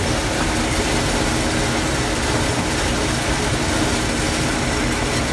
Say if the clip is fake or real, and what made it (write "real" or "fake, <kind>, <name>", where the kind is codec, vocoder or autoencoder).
real